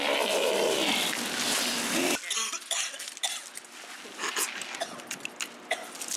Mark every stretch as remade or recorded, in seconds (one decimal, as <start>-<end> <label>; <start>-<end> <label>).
0.0-6.2 recorded